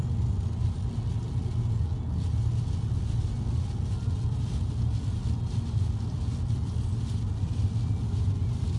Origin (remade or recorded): recorded